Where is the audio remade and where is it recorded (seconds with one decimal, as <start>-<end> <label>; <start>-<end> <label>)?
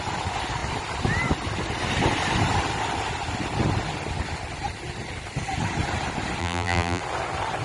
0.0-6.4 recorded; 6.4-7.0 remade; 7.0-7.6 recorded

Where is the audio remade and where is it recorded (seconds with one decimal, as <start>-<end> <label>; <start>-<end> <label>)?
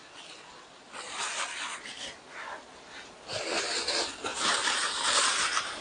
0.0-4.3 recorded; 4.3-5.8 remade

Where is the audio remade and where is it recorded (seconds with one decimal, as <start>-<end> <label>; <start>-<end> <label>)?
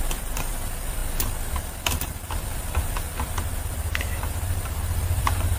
0.0-1.0 remade; 1.0-1.5 recorded; 1.5-5.6 remade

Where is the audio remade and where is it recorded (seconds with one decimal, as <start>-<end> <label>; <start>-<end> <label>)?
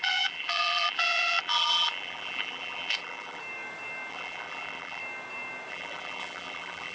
0.0-3.4 remade; 3.4-4.1 recorded; 4.1-5.0 remade; 5.0-5.7 recorded; 5.7-6.9 remade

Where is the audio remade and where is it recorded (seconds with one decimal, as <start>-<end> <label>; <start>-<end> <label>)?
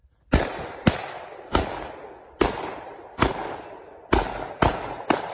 0.0-1.9 remade; 1.9-5.3 recorded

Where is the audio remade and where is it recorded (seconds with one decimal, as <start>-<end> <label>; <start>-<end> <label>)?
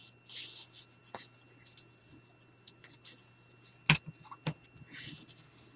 0.0-5.8 recorded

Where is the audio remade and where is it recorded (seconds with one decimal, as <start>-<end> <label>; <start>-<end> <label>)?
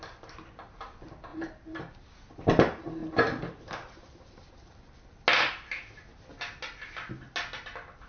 0.0-1.3 recorded; 1.3-2.0 remade; 2.0-3.0 recorded; 3.0-4.5 remade; 4.5-8.1 recorded